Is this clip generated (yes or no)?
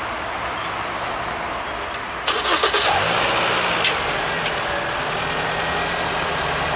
no